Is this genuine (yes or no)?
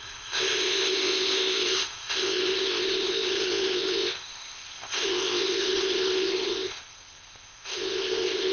no